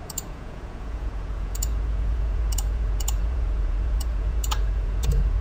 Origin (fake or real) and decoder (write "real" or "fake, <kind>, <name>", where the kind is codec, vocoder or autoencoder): fake, vocoder, Vocos